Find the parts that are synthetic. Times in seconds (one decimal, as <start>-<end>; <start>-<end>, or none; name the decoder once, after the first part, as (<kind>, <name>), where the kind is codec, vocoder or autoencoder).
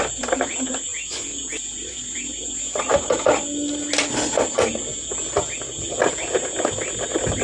none